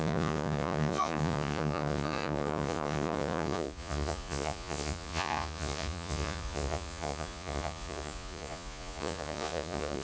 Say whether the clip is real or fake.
fake